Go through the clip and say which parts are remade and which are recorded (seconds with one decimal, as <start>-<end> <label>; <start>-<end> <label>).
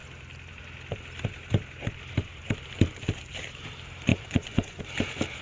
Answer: 0.0-4.1 recorded; 4.1-4.8 remade; 4.8-5.4 recorded